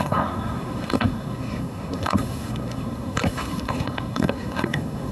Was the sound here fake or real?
fake